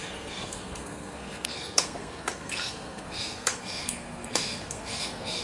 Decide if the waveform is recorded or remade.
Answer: remade